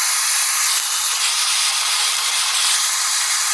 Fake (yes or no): no